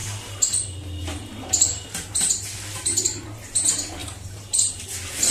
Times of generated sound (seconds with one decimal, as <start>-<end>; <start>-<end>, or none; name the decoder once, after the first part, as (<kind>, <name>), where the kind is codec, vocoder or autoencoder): 4.0-4.7 (vocoder, BigVGAN v2)